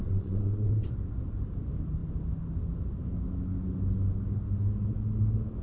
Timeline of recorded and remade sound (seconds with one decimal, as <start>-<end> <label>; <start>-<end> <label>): 0.0-0.9 remade; 0.9-5.6 recorded